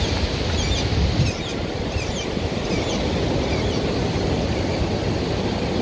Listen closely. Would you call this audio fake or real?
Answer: real